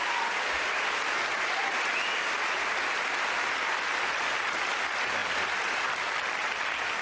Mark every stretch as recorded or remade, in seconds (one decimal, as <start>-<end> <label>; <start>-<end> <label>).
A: 0.0-7.0 recorded